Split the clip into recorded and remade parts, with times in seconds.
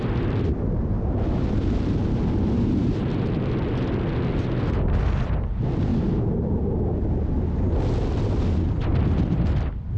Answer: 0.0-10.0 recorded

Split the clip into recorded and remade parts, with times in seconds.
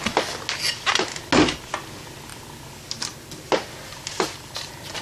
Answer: 0.0-5.0 recorded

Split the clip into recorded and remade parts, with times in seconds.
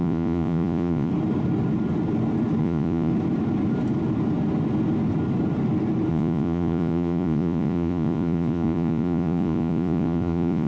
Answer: 0.0-1.1 remade; 1.1-2.6 recorded; 2.6-3.1 remade; 3.1-6.1 recorded; 6.1-10.7 remade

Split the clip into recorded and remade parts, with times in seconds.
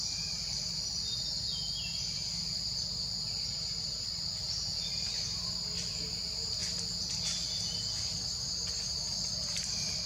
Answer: 0.0-10.1 recorded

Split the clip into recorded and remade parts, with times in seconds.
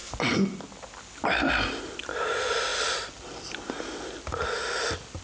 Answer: 0.0-5.2 recorded